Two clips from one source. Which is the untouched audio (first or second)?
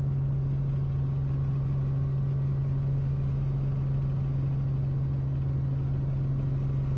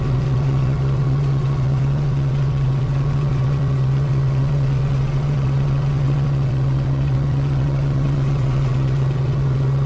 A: first